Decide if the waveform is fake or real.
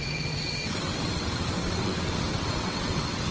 fake